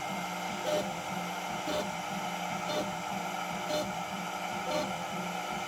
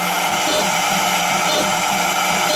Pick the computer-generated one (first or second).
second